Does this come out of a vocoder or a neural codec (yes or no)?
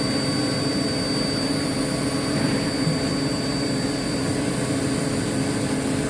no